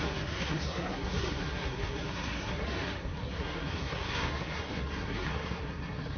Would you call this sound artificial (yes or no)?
yes